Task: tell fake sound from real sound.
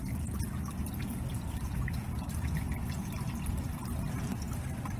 real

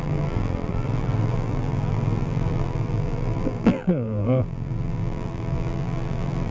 fake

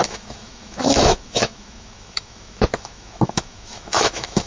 fake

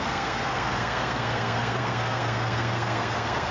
fake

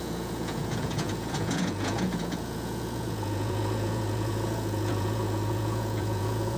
fake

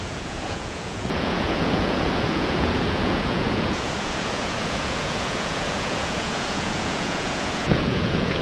fake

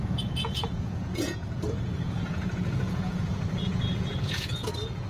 fake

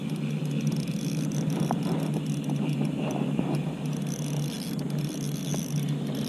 real